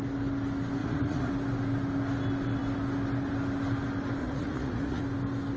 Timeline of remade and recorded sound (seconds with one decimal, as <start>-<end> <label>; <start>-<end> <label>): 0.0-0.8 recorded; 0.8-1.3 remade; 1.3-4.2 recorded; 4.2-5.0 remade; 5.0-5.6 recorded